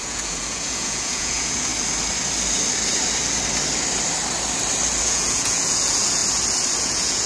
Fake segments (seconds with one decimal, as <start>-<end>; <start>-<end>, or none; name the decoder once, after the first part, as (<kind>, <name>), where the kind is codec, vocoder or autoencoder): 0.0-1.7 (vocoder, Vocos); 5.0-6.2; 6.8-7.3